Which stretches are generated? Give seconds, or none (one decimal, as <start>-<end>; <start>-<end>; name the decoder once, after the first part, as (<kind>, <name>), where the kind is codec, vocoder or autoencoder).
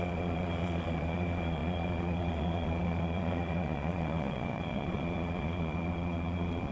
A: 0.0-6.7 (vocoder, Vocos)